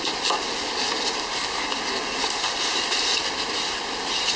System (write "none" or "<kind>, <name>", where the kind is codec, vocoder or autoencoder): none